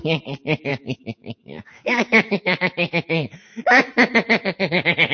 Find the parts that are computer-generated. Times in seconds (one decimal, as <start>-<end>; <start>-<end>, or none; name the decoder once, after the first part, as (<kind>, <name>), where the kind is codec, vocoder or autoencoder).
0.7-3.8 (autoencoder, DAC-VAE)

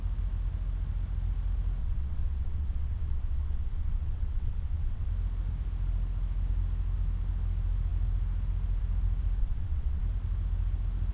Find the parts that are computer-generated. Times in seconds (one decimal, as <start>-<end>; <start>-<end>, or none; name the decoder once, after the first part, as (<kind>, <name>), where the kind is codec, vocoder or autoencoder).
1.8-5.1 (vocoder, WaveNeXt); 9.4-10.0